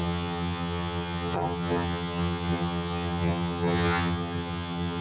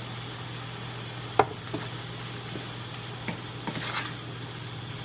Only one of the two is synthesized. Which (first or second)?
first